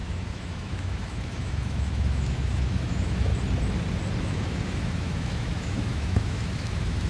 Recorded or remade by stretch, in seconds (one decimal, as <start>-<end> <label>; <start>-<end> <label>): 0.0-3.3 remade; 3.3-4.2 recorded; 4.2-7.1 remade